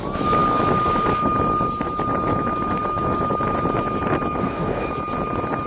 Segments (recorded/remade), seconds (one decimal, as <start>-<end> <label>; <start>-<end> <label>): 0.0-4.4 recorded; 4.4-4.9 remade; 4.9-5.7 recorded